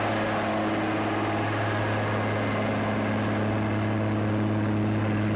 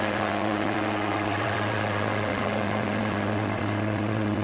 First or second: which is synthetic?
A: second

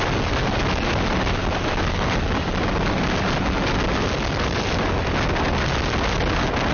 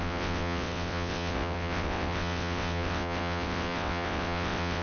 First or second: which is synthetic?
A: second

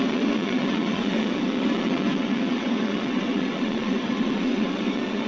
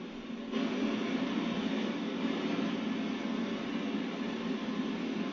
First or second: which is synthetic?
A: first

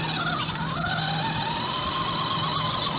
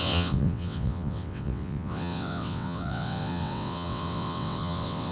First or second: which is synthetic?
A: second